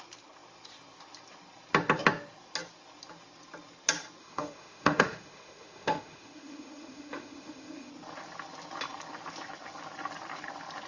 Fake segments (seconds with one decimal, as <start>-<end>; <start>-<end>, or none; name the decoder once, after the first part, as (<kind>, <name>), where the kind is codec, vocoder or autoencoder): 4.2-7.9 (autoencoder, DAC-VAE)